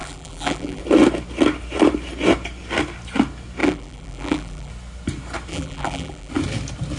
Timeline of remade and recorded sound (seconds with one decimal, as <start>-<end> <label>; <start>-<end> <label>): 0.0-0.8 remade; 0.8-3.6 recorded; 3.6-4.7 remade; 4.7-5.5 recorded; 5.5-6.3 remade; 6.3-7.0 recorded